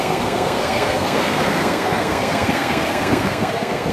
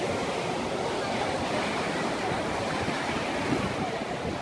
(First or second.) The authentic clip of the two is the second